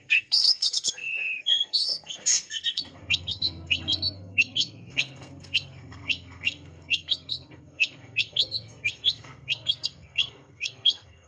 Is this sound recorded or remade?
remade